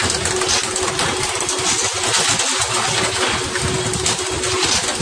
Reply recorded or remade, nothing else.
recorded